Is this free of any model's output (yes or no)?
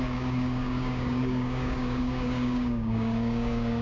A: no